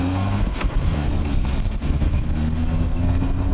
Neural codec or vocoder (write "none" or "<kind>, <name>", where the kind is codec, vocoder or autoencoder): codec, SNAC